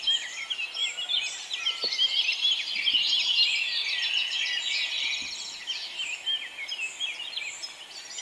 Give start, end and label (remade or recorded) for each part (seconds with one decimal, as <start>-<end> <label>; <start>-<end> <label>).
0.0-0.8 recorded; 0.8-4.6 remade; 4.6-8.2 recorded